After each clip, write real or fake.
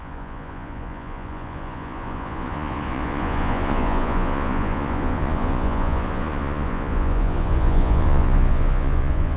fake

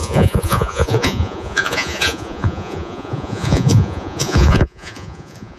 fake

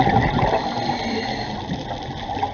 real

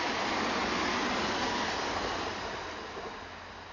real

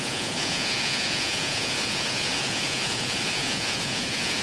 fake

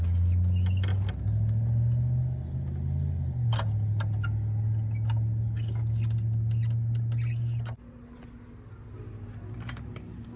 real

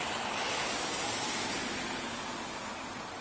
real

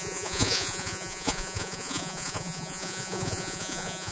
fake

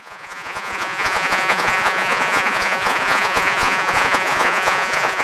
fake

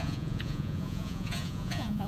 fake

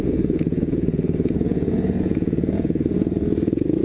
fake